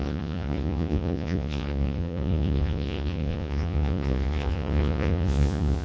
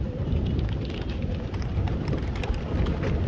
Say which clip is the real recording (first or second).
second